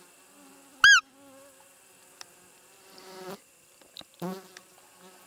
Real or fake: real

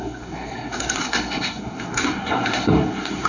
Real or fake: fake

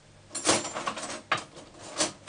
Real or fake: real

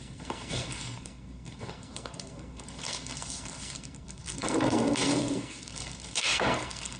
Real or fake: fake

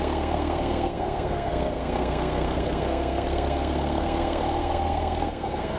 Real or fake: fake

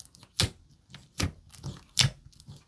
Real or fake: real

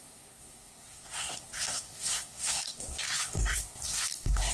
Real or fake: fake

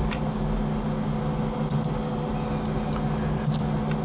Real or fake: real